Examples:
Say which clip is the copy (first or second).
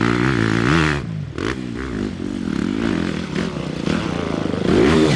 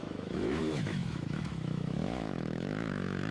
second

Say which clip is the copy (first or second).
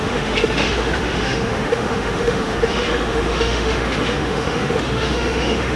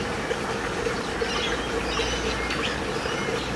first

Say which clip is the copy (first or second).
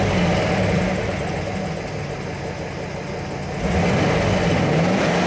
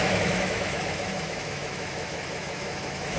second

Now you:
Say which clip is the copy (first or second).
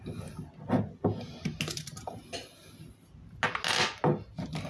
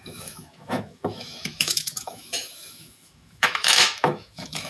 second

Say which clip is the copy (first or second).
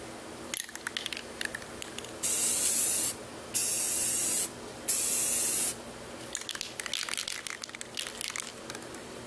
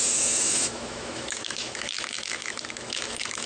second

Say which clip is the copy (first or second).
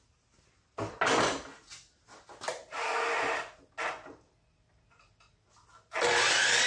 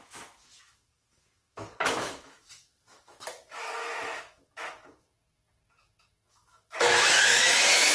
second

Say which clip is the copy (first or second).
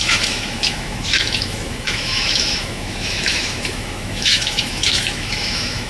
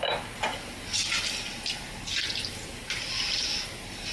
first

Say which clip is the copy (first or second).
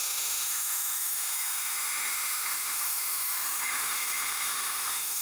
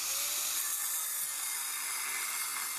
first